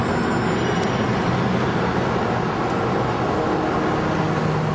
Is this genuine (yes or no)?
yes